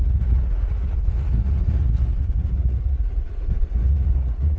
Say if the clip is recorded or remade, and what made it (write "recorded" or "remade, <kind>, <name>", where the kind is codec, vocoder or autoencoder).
remade, vocoder, Vocos